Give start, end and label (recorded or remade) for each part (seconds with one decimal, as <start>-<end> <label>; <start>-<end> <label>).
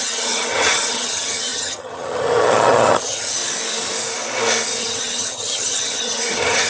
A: 0.0-3.4 remade; 3.4-4.8 recorded; 4.8-6.7 remade